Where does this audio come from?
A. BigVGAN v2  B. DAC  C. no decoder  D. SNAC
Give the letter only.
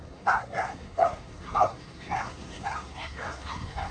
D